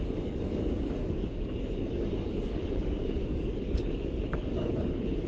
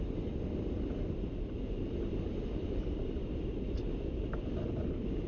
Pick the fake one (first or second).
first